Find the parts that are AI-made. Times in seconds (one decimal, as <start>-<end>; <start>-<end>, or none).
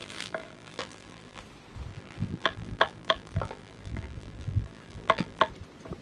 0.0-1.4; 1.9-5.5